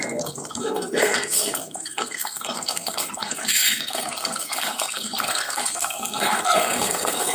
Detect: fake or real fake